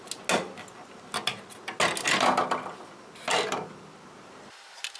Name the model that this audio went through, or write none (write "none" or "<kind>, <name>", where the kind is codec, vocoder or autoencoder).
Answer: none